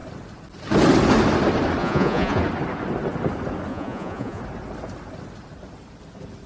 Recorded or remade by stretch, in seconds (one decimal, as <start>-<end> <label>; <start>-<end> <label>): 0.0-1.8 recorded; 1.8-2.4 remade; 2.4-3.7 recorded; 3.7-4.4 remade; 4.4-6.5 recorded